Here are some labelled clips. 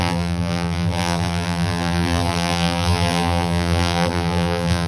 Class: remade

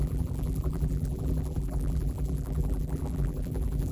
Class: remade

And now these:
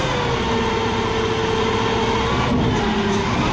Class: recorded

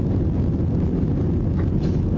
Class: recorded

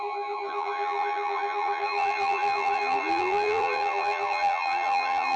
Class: remade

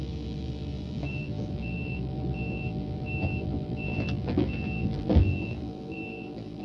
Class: remade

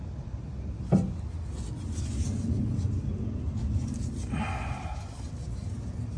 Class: recorded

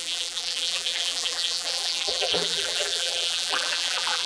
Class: remade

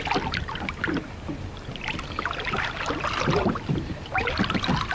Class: recorded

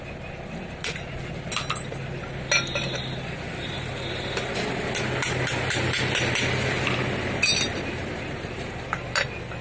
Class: recorded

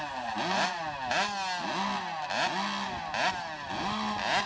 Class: recorded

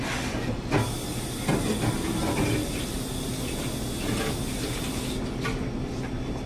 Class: recorded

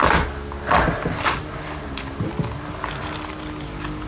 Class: recorded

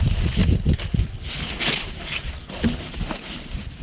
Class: recorded